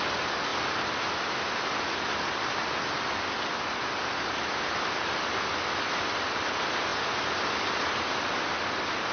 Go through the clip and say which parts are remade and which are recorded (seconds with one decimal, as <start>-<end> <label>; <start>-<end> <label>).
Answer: 0.0-9.1 recorded